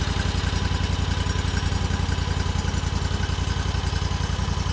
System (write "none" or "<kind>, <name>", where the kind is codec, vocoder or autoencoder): none